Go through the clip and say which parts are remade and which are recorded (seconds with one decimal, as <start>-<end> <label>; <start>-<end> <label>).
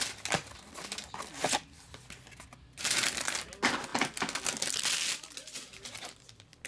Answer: 0.0-6.7 recorded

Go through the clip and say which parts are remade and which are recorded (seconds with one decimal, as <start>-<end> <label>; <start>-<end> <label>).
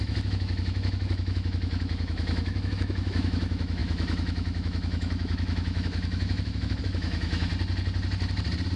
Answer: 0.0-7.5 remade; 7.5-8.8 recorded